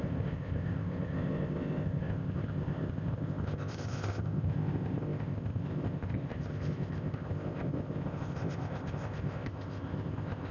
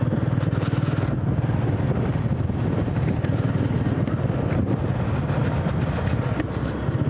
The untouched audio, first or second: second